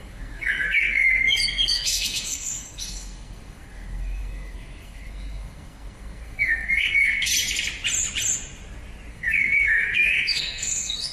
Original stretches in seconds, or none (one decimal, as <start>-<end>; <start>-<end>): 7.3-9.1